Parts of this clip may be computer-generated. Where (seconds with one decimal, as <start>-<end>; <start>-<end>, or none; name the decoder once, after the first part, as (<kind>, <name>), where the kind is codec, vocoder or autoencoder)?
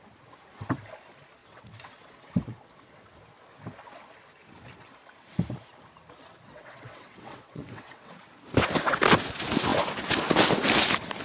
1.4-3.2 (vocoder, WaveNeXt); 6.5-8.1